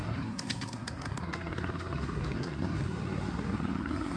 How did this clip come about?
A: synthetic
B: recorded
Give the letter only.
A